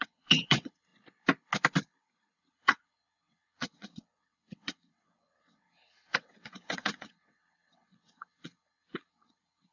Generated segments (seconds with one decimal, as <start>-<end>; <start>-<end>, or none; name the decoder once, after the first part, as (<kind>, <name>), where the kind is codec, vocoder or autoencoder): 0.0-0.9 (vocoder, WaveNeXt); 2.4-9.7